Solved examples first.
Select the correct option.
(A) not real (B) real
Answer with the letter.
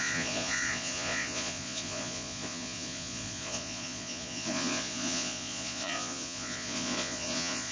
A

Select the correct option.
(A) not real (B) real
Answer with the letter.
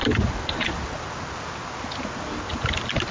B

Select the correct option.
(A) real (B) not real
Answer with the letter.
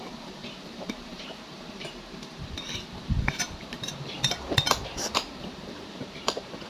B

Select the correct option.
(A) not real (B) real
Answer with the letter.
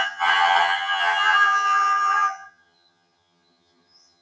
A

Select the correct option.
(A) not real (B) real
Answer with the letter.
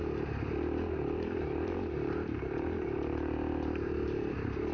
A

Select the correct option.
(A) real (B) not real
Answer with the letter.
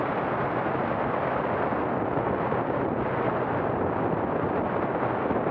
A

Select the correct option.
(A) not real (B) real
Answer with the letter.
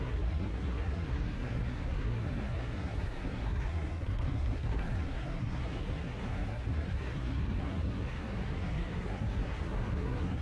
A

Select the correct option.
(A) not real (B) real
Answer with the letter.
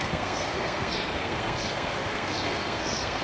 A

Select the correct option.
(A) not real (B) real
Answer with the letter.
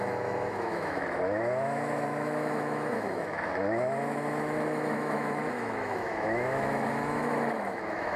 A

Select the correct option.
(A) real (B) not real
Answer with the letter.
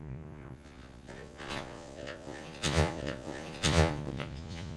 B